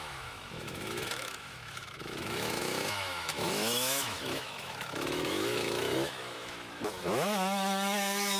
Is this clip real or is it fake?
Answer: fake